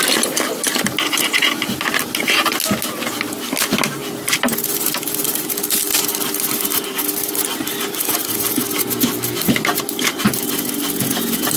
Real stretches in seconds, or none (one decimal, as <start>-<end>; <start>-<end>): 0.0-11.6